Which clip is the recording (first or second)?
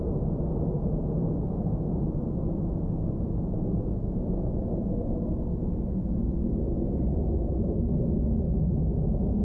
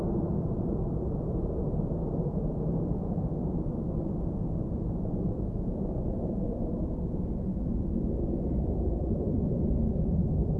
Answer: first